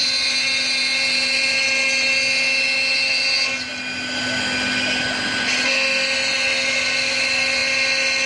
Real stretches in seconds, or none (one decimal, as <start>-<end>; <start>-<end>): 0.0-8.3